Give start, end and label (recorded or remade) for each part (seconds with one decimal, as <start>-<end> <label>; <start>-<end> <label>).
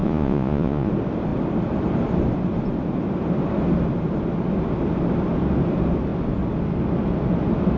0.0-0.9 remade; 0.9-7.8 recorded